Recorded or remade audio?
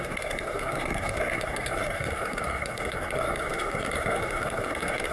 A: remade